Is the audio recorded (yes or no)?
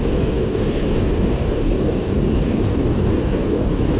no